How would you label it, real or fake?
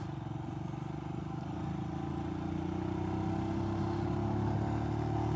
real